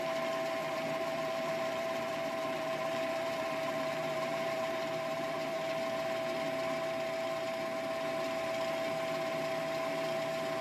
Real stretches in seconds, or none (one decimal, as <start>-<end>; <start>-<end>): 0.0-0.6; 5.7-10.6